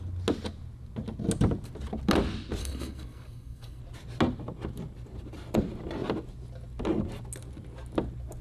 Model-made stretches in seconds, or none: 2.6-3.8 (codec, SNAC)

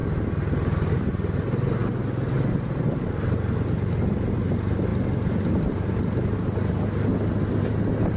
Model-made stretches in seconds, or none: none

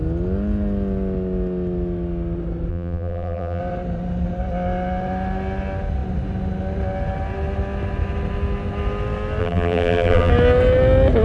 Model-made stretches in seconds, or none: 2.7-3.6 (vocoder, BigVGAN v2); 9.4-10.3

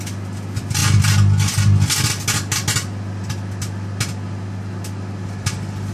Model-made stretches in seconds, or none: none

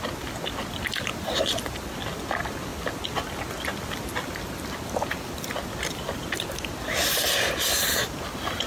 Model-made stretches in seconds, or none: none